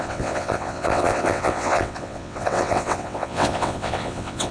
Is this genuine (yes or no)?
no